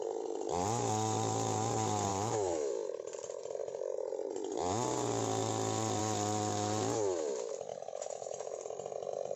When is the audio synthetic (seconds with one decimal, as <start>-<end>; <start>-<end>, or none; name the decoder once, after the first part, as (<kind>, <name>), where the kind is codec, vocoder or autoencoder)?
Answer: 2.1-2.7 (autoencoder, DAC-VAE); 7.7-8.6